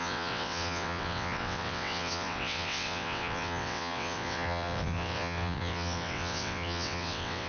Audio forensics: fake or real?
fake